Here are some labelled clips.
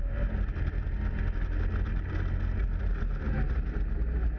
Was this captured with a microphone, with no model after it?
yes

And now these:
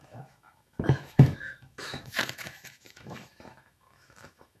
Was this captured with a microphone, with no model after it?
no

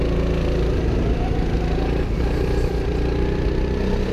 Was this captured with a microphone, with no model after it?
yes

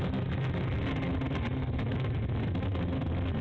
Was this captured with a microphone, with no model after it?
yes